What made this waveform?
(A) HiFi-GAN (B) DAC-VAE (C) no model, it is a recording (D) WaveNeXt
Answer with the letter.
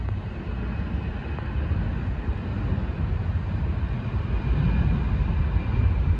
C